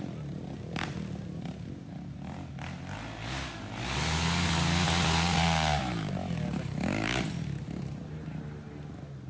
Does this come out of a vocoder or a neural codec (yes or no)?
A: no